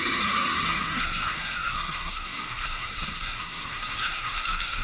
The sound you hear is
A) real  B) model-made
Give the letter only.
B